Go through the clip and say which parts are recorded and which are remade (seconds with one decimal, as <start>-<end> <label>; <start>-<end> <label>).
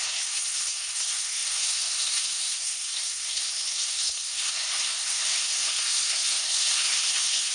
0.0-7.5 remade